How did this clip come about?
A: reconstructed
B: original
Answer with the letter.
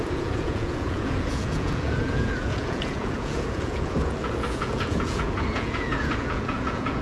A